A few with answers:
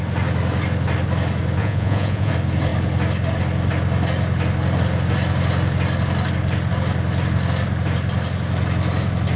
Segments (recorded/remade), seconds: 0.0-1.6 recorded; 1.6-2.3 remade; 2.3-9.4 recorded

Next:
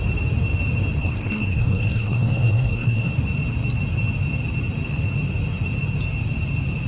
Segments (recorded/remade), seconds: 0.0-1.0 recorded; 1.0-3.1 remade; 3.1-6.9 recorded

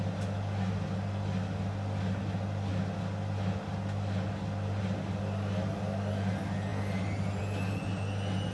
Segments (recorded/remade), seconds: 0.0-8.5 recorded